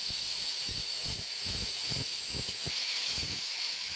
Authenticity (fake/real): fake